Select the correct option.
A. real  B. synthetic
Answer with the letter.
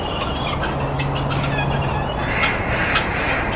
A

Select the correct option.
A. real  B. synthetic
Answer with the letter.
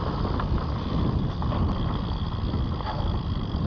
A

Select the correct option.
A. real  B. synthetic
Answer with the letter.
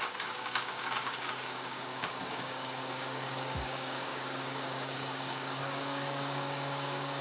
B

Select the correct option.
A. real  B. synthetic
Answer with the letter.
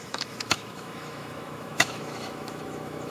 B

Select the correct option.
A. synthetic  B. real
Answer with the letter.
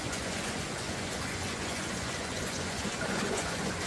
A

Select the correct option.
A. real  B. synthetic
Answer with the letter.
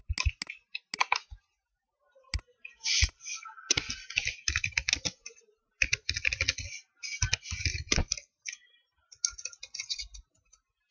A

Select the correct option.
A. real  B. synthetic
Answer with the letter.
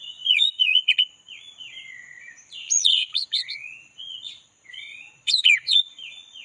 B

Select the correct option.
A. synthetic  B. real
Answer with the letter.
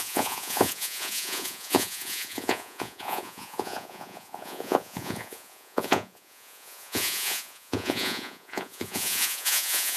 A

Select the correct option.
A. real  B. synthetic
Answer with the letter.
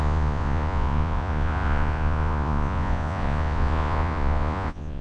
B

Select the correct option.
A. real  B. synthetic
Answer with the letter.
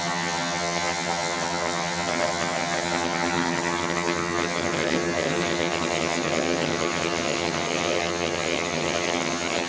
B